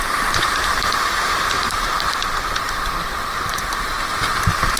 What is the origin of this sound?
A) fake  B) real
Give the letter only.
A